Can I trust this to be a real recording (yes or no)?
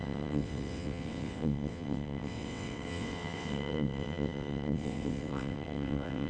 no